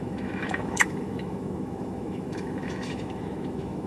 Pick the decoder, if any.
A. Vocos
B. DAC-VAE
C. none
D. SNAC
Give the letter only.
B